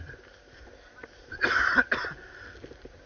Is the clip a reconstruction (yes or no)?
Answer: no